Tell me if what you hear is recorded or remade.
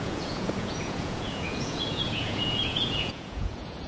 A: remade